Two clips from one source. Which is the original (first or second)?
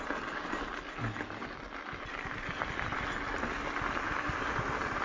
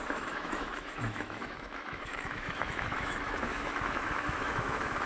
first